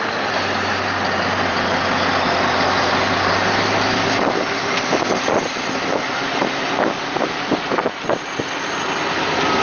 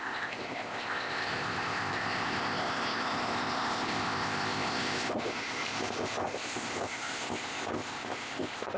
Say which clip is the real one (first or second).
first